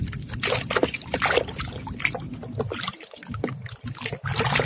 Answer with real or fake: real